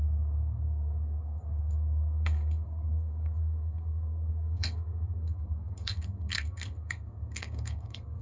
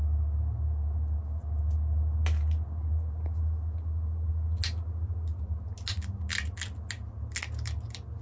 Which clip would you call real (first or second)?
second